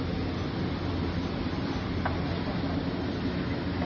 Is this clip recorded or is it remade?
recorded